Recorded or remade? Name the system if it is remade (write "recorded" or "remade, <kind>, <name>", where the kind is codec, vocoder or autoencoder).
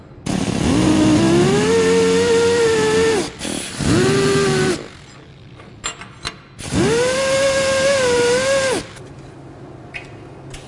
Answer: recorded